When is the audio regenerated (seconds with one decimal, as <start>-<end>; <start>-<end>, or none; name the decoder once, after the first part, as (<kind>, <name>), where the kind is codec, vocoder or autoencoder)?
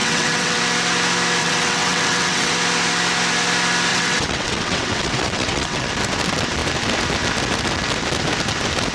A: 0.0-0.6 (vocoder, WaveNeXt); 1.4-2.5; 3.9-5.9